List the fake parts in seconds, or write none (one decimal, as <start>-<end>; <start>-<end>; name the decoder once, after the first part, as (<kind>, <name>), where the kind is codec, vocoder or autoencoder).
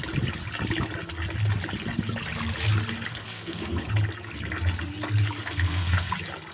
3.1-3.9 (codec, SNAC); 5.4-6.1